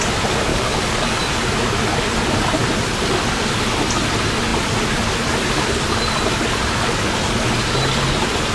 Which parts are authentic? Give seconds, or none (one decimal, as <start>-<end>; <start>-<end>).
0.0-0.5; 1.2-8.5

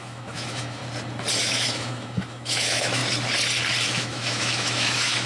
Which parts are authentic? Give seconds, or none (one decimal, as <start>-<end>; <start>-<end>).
0.8-1.4; 3.0-3.8

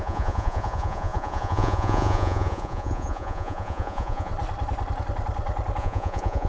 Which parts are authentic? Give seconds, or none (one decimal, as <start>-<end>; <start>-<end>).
4.3-5.8

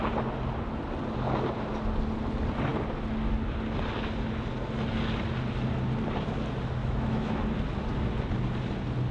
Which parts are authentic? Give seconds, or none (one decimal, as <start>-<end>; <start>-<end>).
0.0-6.8; 7.4-9.1

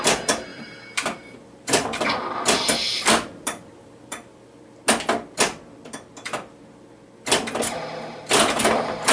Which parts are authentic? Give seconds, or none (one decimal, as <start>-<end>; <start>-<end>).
0.0-0.5; 4.6-9.1

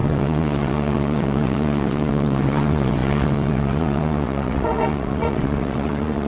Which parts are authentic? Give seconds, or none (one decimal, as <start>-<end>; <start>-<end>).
none

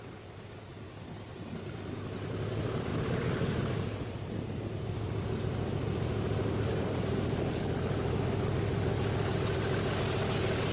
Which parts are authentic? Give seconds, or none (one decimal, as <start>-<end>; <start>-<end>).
0.0-10.7